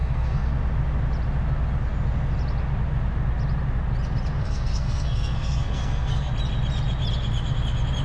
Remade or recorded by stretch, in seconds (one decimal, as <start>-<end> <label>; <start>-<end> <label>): 0.0-0.5 remade; 0.5-4.4 recorded; 4.4-6.3 remade; 6.3-8.0 recorded